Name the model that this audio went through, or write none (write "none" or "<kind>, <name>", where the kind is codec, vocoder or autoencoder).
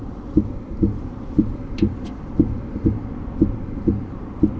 vocoder, BigVGAN v2